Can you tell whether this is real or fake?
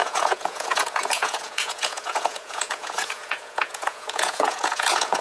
fake